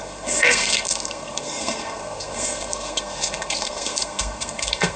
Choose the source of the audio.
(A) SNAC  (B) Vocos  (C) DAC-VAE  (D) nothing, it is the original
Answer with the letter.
A